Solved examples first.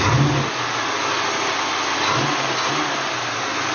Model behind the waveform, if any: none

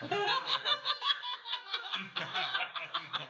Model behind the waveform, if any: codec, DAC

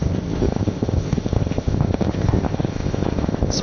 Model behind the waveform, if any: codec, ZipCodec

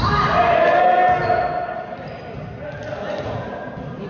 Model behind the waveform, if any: none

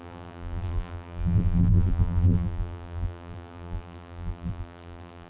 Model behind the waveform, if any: vocoder, BigVGAN v2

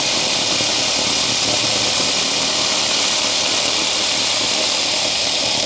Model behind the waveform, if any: vocoder, BigVGAN v2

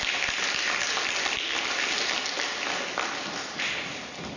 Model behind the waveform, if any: none